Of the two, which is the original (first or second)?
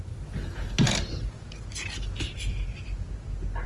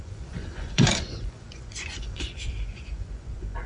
first